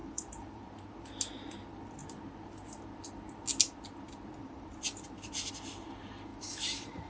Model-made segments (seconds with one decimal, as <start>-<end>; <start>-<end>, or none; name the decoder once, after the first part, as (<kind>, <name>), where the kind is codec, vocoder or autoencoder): 0.0-0.6 (vocoder, BigVGAN v2); 4.4-5.5; 6.3-7.1